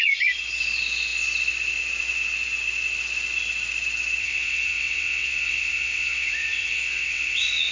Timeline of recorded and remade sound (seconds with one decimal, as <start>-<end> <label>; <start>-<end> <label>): 0.0-4.2 recorded; 4.2-7.7 remade